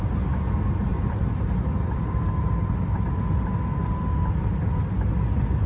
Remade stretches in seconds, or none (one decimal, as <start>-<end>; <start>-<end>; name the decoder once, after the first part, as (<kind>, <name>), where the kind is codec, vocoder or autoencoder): 0.9-4.3 (vocoder, BigVGAN v2)